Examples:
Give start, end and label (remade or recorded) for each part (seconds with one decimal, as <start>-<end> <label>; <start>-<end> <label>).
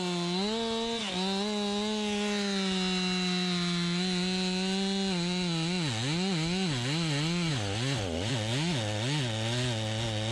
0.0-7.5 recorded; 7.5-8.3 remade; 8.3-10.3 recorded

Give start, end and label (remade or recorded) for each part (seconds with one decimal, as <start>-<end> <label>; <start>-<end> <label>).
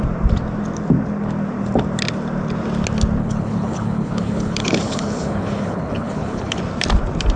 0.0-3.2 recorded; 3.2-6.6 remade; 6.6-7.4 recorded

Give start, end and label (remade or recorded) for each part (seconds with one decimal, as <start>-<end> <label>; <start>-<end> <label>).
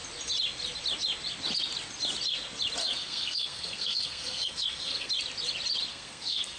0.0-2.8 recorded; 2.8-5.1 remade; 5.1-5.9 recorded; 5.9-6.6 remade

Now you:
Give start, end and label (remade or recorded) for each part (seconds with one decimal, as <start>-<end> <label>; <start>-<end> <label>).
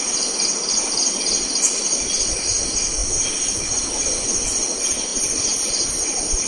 0.0-5.1 recorded; 5.1-6.5 remade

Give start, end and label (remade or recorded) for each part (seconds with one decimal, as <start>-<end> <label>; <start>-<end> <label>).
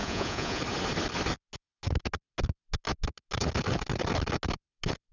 0.0-0.6 remade; 0.6-5.1 recorded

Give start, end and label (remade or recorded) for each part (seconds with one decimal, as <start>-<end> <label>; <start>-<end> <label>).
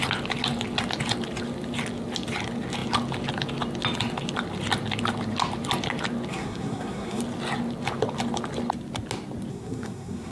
0.0-6.3 recorded; 6.3-7.2 remade; 7.2-9.5 recorded; 9.5-10.3 remade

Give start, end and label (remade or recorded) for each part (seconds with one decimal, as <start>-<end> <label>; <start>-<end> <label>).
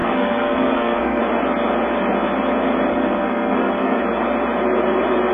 0.0-1.2 remade; 1.2-2.9 recorded; 2.9-4.0 remade; 4.0-5.3 recorded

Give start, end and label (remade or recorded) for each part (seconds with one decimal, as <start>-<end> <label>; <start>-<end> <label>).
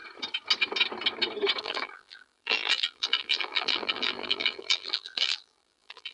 0.0-1.6 recorded; 1.6-6.1 remade